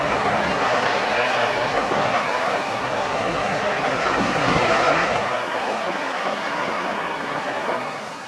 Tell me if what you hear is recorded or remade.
remade